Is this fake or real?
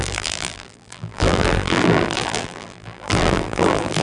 fake